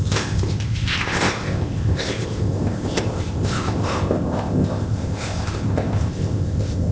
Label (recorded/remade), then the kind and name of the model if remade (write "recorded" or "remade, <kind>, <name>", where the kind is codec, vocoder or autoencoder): remade, codec, ZipCodec